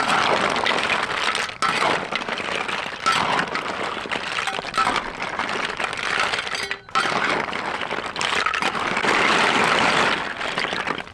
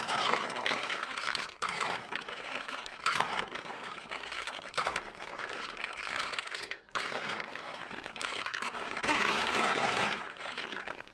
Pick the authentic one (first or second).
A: first